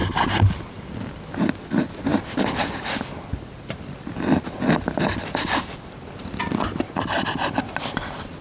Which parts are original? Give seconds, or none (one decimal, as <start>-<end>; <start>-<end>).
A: 0.9-8.4